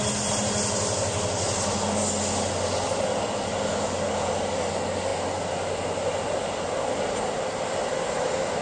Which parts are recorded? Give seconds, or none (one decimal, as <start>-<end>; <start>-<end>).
0.0-8.6